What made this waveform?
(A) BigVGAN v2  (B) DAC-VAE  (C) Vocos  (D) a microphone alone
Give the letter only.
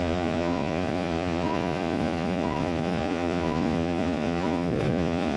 C